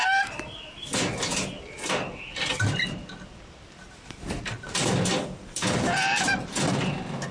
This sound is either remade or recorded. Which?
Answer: recorded